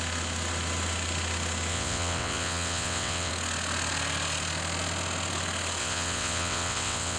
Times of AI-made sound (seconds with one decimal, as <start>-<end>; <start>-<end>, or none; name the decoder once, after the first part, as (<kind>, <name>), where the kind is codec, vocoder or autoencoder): 1.7-3.3 (vocoder, WaveNeXt); 5.8-7.2